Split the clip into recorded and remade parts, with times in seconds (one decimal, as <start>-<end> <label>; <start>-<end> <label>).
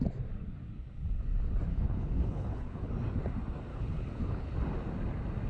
0.0-1.7 recorded; 1.7-2.9 remade; 2.9-3.7 recorded; 3.7-4.5 remade; 4.5-5.5 recorded